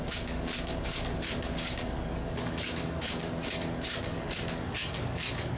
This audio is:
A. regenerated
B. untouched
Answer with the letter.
A